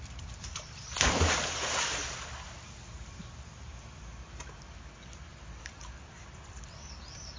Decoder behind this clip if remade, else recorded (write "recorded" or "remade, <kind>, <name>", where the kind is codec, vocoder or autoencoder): remade, vocoder, BigVGAN v2